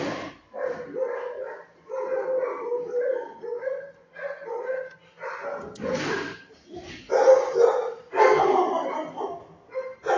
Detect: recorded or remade recorded